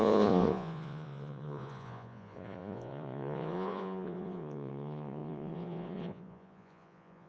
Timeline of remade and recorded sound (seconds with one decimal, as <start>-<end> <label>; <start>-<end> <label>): 0.0-7.3 remade

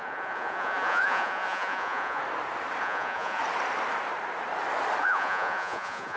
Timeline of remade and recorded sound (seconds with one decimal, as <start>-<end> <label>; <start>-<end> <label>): 0.0-2.2 remade; 2.2-2.8 recorded; 2.8-3.4 remade; 3.4-5.0 recorded; 5.0-6.2 remade

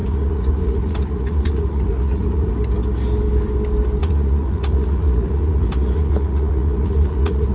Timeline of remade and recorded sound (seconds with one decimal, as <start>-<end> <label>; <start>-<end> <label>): 0.0-2.5 remade; 2.5-4.0 recorded; 4.0-7.5 remade

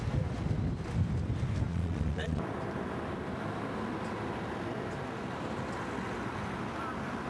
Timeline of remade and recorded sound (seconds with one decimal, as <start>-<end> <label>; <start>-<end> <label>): 0.0-1.7 recorded; 1.7-2.4 remade; 2.4-7.3 recorded